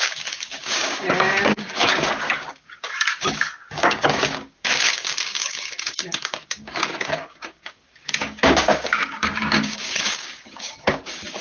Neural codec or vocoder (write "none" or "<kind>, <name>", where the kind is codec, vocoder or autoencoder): codec, DAC